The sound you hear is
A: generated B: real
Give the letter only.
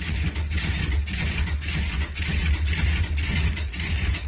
A